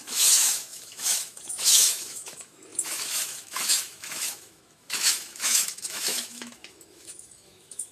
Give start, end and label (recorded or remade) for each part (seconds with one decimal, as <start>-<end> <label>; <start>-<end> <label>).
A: 0.0-7.9 remade